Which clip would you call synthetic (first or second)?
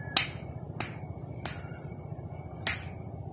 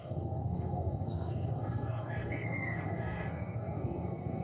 second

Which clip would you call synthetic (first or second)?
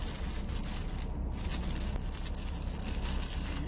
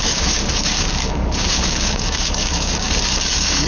second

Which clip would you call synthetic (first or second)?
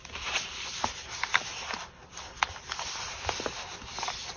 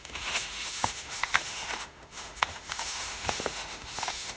second